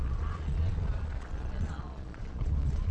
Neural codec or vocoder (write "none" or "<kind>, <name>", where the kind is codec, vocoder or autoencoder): vocoder, Vocos